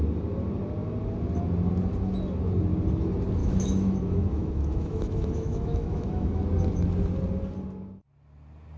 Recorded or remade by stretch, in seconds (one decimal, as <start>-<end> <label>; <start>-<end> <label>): 0.0-3.4 recorded; 3.4-6.4 remade; 6.4-8.8 recorded